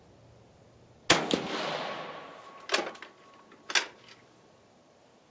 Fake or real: real